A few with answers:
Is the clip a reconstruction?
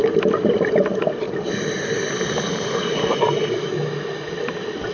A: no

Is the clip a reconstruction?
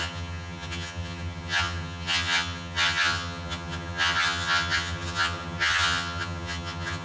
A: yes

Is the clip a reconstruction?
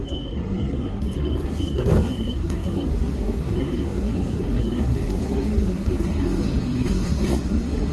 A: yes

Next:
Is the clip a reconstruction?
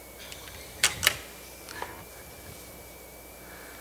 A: no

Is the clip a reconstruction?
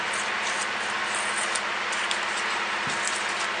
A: no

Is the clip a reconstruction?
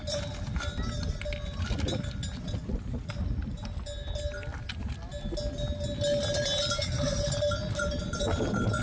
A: no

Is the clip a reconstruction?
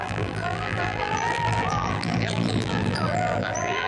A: yes